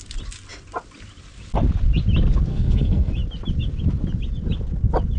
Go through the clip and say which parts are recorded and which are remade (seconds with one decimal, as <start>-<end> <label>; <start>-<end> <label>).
0.0-2.5 recorded; 2.5-3.1 remade; 3.1-5.2 recorded